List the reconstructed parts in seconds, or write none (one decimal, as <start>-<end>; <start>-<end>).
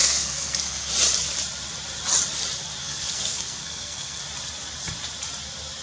0.0-0.9; 2.8-4.2